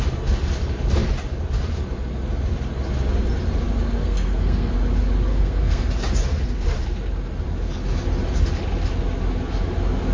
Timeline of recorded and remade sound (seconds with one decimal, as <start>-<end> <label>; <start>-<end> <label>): 0.0-4.0 recorded; 4.0-4.7 remade; 4.7-5.3 recorded; 5.3-5.9 remade; 5.9-10.1 recorded